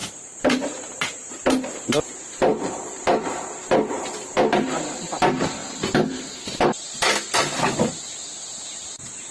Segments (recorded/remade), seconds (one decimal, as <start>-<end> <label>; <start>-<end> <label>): 0.0-5.6 remade; 5.6-6.1 recorded; 6.1-9.3 remade